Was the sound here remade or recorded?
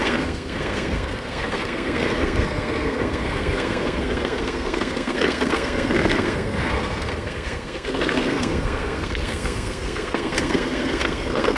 remade